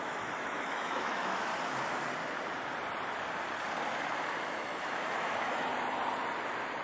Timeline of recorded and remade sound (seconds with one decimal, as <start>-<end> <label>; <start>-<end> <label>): 0.0-1.5 remade; 1.5-4.4 recorded; 4.4-5.7 remade; 5.7-6.8 recorded